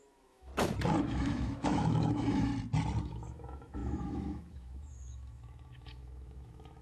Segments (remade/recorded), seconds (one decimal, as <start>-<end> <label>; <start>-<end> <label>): 0.0-0.5 remade; 0.5-1.0 recorded; 1.0-2.5 remade; 2.5-3.0 recorded; 3.0-6.8 remade